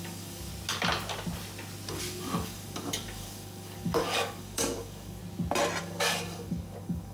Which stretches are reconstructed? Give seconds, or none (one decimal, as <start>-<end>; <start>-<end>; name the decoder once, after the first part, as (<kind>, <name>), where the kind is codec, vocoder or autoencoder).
0.0-0.5 (codec, DAC); 1.9-5.2; 5.8-7.1